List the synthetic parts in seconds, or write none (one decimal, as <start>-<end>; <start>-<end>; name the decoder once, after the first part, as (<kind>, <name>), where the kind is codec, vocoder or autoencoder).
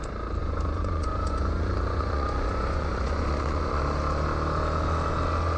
0.4-3.8 (vocoder, Vocos)